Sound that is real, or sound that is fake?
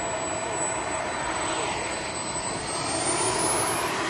real